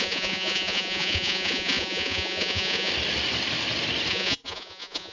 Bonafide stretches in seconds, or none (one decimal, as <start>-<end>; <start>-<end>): 2.9-4.1